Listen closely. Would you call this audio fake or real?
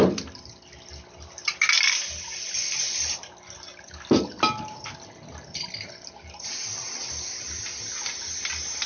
real